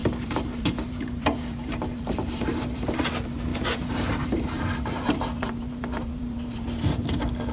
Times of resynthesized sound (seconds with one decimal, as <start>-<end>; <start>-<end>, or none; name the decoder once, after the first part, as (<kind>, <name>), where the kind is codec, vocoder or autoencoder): 0.0-3.1 (vocoder, BigVGAN v2); 3.5-7.0